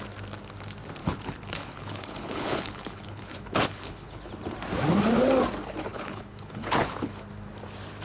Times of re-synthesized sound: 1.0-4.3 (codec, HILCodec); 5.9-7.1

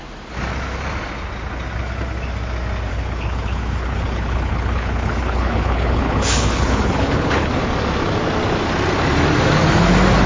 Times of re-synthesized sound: 2.9-7.5 (codec, HILCodec)

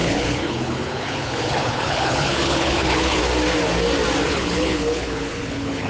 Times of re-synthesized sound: 0.0-3.2 (codec, HILCodec); 4.3-5.9

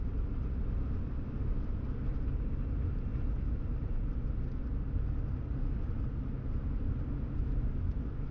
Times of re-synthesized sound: none

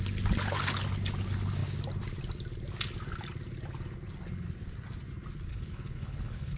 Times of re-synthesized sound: 5.5-6.6 (codec, HILCodec)

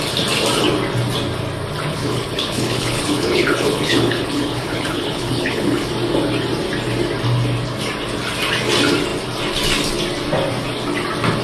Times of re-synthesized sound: 1.9-5.9 (codec, HILCodec)